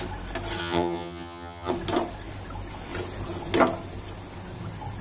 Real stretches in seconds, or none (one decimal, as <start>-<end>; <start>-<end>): 0.0-0.6; 1.7-5.0